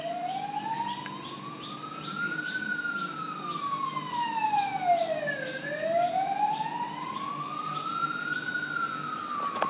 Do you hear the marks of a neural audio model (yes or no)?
no